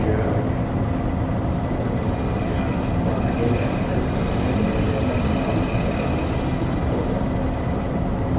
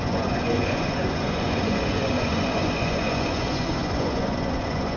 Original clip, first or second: first